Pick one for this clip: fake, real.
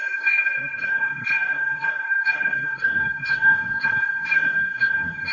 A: fake